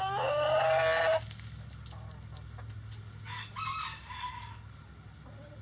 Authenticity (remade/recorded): recorded